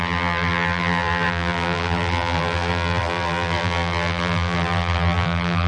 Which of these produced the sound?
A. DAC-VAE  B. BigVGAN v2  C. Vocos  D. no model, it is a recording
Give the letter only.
B